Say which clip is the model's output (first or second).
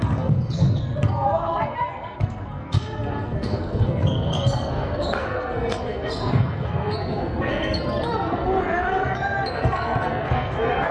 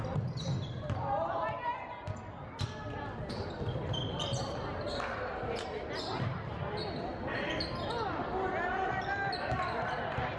first